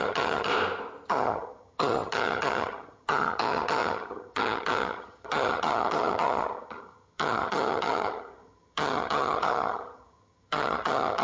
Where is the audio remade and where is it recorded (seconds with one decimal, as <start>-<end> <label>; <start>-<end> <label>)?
0.0-0.5 remade; 0.5-1.1 recorded; 1.1-11.2 remade